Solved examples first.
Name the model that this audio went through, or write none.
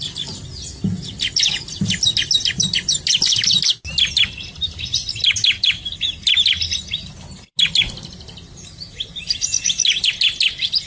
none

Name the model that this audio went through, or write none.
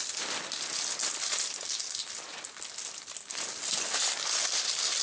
none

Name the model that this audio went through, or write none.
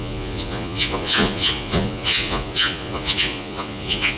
vocoder, Vocos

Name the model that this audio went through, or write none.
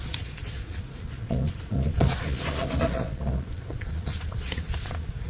vocoder, Vocos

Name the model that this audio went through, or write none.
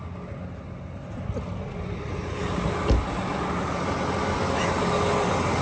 none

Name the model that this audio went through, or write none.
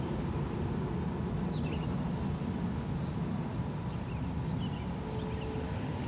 none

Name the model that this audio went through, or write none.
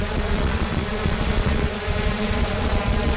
vocoder, Vocos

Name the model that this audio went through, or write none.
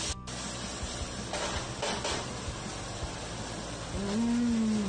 none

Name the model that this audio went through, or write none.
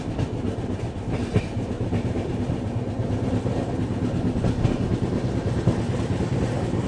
none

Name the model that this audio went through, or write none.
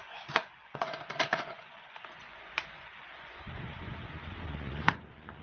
vocoder, Vocos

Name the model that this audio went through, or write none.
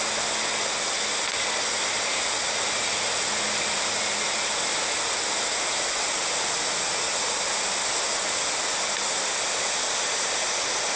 none